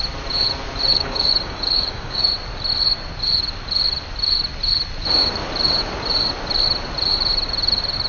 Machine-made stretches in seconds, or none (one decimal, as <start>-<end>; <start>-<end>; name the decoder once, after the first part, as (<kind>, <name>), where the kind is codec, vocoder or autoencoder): 0.9-2.3 (codec, DAC)